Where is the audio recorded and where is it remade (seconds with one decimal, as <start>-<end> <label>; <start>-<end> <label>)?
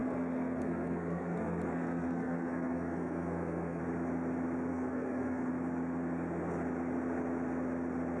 0.0-3.8 remade; 3.8-4.7 recorded; 4.7-5.5 remade; 5.5-8.2 recorded